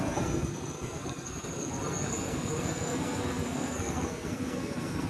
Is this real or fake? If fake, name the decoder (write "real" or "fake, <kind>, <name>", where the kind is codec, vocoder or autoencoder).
fake, codec, SNAC